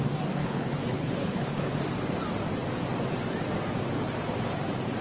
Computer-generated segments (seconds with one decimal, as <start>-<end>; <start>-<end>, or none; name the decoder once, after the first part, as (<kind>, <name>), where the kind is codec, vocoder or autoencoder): 0.4-1.7 (codec, HILCodec)